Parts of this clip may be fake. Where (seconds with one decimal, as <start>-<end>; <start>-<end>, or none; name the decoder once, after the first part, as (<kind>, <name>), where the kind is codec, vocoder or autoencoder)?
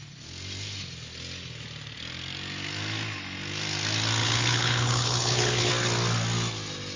4.2-5.7 (codec, HILCodec)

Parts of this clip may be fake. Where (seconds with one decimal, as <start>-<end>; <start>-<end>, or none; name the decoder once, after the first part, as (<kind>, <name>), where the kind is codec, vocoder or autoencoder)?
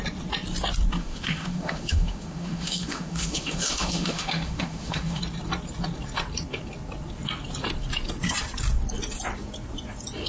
1.0-5.2 (autoencoder, DAC-VAE)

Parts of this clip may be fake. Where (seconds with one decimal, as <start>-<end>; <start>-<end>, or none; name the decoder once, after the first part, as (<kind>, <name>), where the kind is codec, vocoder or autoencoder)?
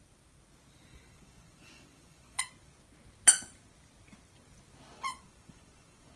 0.9-2.5 (vocoder, Vocos); 4.9-6.2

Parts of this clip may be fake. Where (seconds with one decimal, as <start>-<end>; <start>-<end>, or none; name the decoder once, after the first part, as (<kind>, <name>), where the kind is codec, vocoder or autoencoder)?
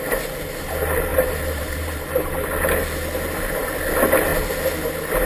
1.1-2.4 (vocoder, BigVGAN v2)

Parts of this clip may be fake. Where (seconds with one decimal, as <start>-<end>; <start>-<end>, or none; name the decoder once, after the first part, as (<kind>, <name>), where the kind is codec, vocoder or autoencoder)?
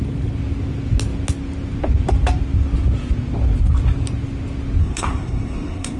4.8-6.0 (codec, SNAC)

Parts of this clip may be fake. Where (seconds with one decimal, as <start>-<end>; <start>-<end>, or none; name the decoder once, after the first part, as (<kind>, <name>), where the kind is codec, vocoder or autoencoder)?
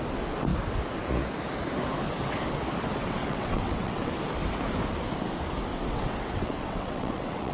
3.0-4.1 (vocoder, WaveNeXt); 5.7-7.5